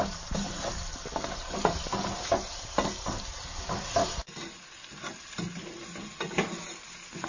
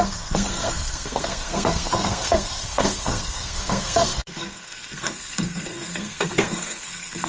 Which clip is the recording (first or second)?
first